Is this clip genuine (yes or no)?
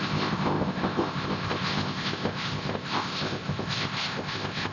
no